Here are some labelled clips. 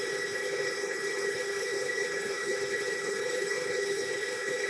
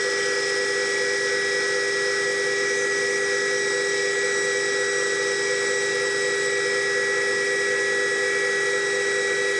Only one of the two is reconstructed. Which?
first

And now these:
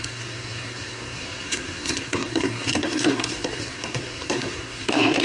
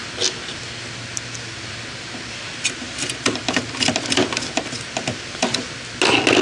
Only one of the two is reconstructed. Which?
first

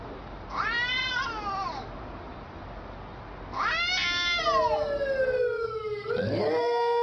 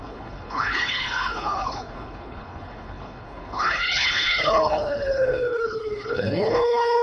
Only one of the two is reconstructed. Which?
second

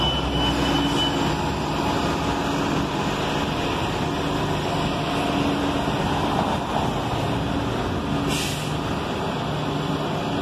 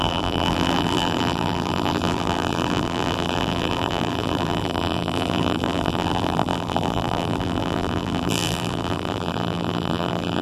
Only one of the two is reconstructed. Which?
second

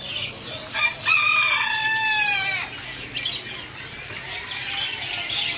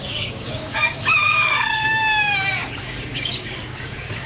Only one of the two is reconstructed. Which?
second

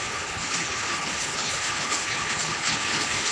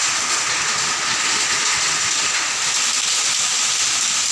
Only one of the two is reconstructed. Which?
first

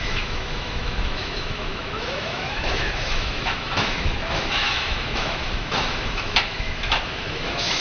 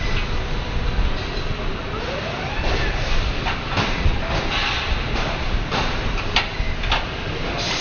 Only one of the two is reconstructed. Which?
first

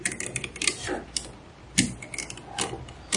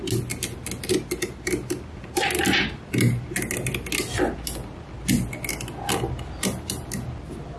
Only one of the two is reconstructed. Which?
first